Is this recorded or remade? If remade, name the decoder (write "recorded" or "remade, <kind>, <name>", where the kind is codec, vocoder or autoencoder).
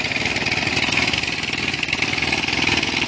recorded